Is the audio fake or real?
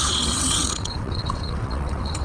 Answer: fake